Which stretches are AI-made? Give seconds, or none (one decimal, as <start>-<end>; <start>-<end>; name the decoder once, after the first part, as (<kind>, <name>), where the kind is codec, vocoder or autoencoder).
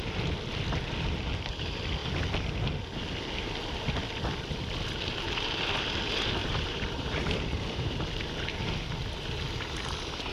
6.4-8.0 (vocoder, BigVGAN v2)